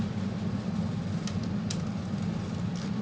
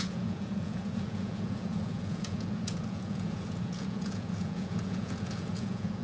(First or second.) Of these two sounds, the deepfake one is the second